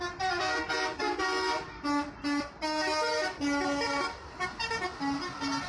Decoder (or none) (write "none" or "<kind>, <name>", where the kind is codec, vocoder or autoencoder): none